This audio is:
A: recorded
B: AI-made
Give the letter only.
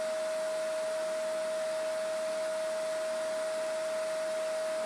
A